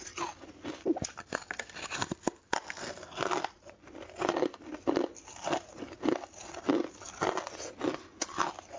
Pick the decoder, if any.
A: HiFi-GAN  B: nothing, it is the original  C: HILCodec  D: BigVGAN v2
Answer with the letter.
B